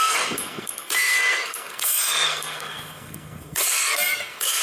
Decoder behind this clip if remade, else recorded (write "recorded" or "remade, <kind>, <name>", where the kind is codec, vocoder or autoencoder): remade, codec, SNAC